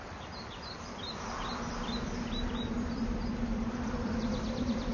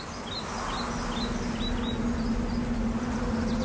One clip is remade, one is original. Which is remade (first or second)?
first